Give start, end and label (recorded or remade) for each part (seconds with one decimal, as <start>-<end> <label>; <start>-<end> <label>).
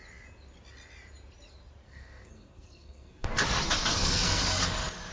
0.0-1.8 recorded; 1.8-3.3 remade; 3.3-3.8 recorded; 3.8-4.6 remade; 4.6-5.1 recorded